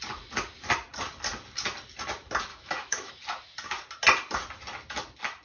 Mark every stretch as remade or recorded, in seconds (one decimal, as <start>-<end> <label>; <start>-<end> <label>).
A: 0.0-2.5 recorded; 2.5-3.1 remade; 3.1-5.4 recorded